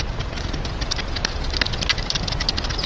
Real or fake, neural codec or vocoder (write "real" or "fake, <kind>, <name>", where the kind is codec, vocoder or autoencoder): real